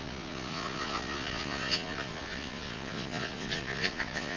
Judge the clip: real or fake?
fake